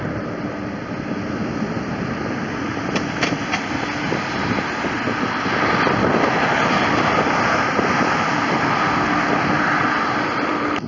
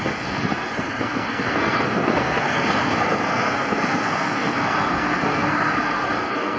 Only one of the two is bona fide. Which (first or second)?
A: first